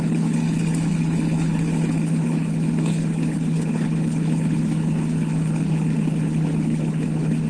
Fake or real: fake